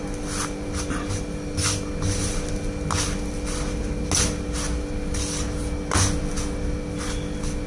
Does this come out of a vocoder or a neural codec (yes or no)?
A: no